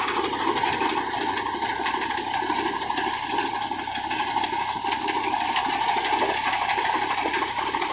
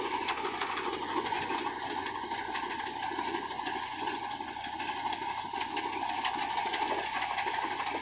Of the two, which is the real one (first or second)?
first